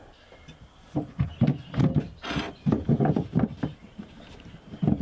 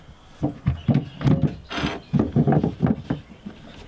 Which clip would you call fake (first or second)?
first